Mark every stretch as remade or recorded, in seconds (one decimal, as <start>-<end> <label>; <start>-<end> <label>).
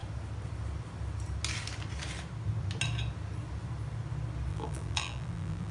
0.0-4.5 recorded; 4.5-5.7 remade